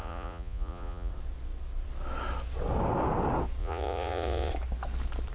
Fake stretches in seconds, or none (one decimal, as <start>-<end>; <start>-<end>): 0.0-1.1; 3.6-4.5